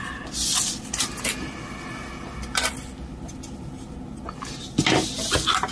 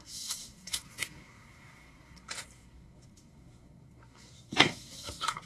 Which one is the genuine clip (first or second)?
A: first